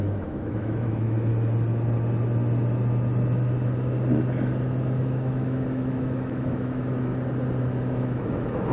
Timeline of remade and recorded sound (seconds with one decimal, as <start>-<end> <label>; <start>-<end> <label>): 0.0-1.3 remade; 1.3-5.0 recorded; 5.0-7.1 remade; 7.1-7.6 recorded; 7.6-8.7 remade